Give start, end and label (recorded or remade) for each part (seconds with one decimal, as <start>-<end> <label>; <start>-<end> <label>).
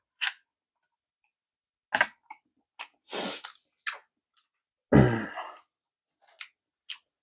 0.0-7.2 recorded